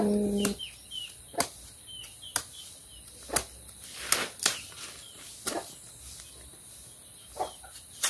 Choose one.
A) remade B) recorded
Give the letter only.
B